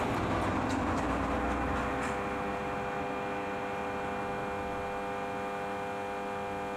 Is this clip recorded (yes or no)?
yes